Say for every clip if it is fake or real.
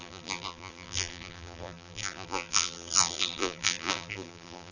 fake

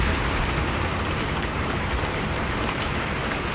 fake